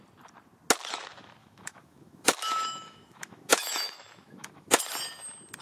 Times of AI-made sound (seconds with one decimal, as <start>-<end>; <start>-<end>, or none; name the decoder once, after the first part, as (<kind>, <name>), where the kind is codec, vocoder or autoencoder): 1.4-4.8 (autoencoder, DAC-VAE)